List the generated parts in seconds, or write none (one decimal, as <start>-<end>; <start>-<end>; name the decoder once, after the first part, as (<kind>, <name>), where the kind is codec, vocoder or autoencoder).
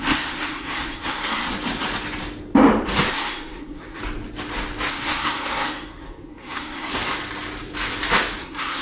0.0-1.5 (codec, SNAC); 3.1-4.0; 4.9-6.9; 8.4-8.8